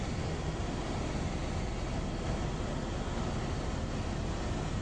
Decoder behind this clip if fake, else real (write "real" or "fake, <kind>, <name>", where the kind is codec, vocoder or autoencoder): real